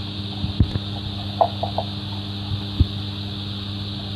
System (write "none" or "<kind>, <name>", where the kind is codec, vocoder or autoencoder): none